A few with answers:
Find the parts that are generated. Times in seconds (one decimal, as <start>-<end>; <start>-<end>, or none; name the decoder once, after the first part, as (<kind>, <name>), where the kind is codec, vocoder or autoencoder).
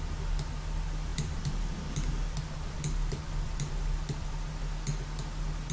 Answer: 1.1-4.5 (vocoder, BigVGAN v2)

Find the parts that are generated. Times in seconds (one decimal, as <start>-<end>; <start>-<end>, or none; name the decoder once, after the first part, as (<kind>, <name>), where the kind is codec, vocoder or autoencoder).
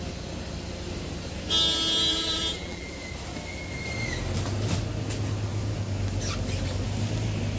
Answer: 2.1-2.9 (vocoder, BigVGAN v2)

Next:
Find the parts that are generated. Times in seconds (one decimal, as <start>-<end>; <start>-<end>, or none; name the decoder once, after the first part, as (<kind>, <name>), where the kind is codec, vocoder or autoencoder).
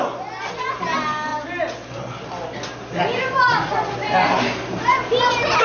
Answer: none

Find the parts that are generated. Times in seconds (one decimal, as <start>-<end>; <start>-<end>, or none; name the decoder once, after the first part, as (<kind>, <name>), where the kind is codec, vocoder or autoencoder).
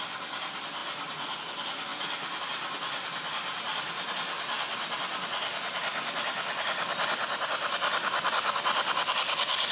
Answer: 1.9-2.4 (vocoder, BigVGAN v2)